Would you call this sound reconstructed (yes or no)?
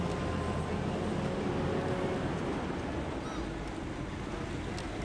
no